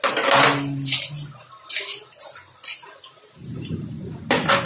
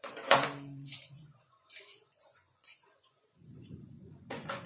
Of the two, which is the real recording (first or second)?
first